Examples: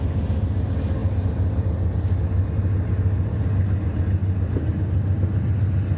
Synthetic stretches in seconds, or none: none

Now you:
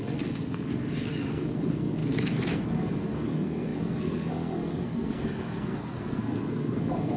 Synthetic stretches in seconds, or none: 0.0-7.2 (codec, SNAC)

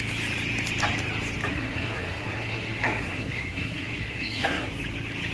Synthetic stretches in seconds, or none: 1.5-4.7 (codec, SNAC)

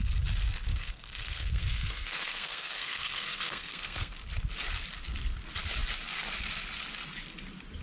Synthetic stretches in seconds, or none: 0.7-4.1 (codec, SNAC)

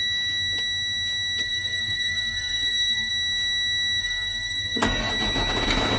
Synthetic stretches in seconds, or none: 1.4-3.1 (codec, SNAC); 4.0-5.1

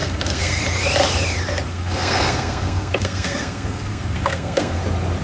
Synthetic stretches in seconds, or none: 0.0-0.6 (codec, SNAC); 1.7-4.8